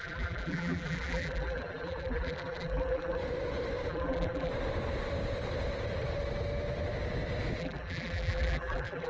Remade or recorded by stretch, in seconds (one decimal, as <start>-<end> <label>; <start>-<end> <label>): 0.0-3.2 remade; 3.2-3.9 recorded; 3.9-4.5 remade; 4.5-7.6 recorded; 7.6-9.1 remade